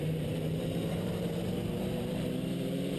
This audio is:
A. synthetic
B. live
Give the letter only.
A